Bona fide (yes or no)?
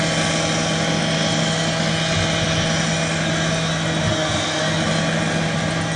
yes